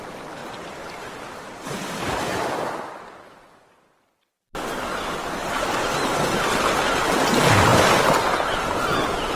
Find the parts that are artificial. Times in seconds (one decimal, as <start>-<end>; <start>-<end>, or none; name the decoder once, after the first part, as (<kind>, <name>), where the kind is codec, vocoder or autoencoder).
0.4-4.6 (vocoder, BigVGAN v2)